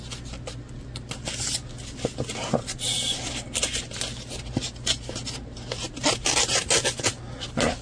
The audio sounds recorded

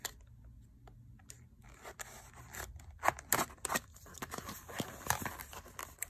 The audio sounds recorded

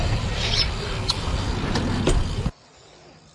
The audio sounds recorded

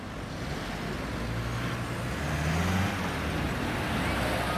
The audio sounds recorded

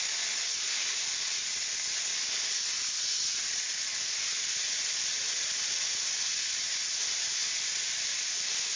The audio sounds recorded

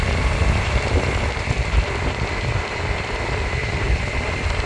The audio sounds recorded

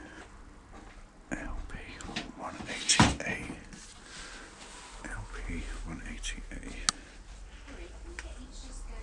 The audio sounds recorded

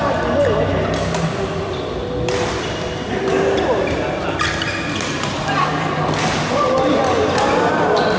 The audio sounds recorded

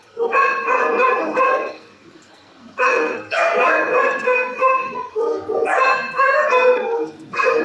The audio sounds remade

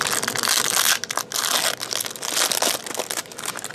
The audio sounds recorded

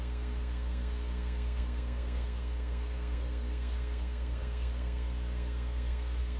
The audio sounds remade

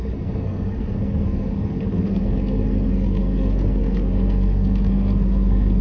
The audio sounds remade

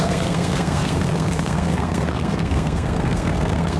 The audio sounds remade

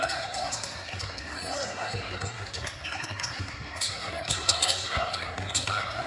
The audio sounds remade